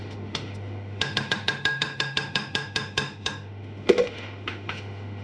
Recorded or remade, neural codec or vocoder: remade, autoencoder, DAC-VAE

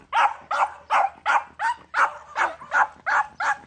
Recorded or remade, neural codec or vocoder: recorded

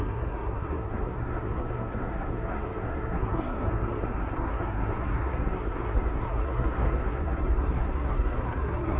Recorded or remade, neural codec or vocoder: remade, codec, SNAC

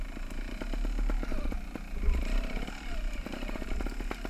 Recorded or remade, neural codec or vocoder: recorded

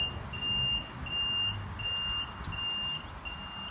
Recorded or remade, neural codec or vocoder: recorded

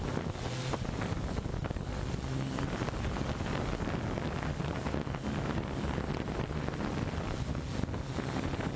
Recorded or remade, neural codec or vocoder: recorded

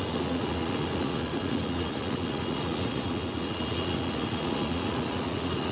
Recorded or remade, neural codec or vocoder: remade, vocoder, Vocos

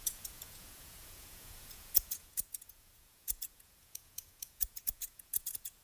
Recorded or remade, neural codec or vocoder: remade, vocoder, Vocos